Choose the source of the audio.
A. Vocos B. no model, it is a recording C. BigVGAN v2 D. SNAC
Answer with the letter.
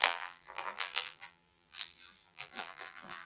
C